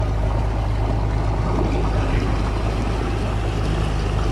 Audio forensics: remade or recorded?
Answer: recorded